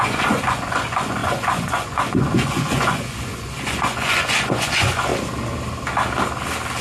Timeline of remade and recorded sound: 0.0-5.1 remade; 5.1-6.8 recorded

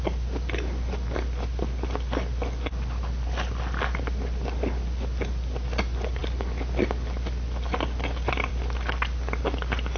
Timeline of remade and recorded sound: 0.0-10.0 recorded

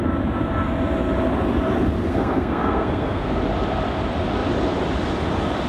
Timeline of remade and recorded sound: 0.0-2.0 recorded; 2.0-3.4 remade; 3.4-5.7 recorded

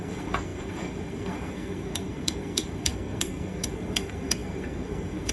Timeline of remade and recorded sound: 0.0-5.3 remade